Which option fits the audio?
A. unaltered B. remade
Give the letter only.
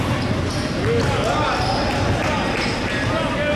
A